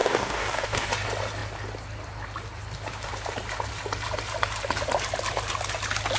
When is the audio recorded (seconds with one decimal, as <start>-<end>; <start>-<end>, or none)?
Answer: 0.9-6.2

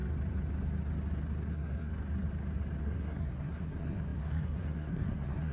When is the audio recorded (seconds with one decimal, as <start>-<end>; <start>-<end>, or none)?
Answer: 0.0-1.5; 1.9-2.8

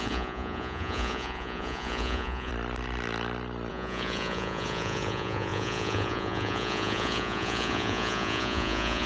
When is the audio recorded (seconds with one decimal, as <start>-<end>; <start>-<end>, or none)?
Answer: 2.5-3.7

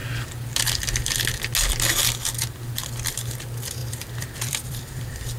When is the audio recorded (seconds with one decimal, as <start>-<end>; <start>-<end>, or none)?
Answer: 0.0-3.8

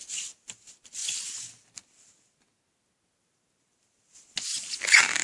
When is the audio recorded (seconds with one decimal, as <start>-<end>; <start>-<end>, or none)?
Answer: 0.0-5.2

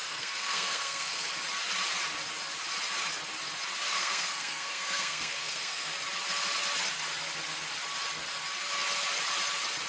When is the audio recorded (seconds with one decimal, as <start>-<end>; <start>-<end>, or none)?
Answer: 1.3-3.9; 5.9-9.9